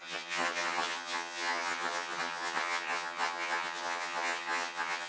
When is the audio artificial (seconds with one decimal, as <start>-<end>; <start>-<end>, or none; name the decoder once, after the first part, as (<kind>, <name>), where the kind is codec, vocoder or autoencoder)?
0.0-5.1 (vocoder, HiFi-GAN)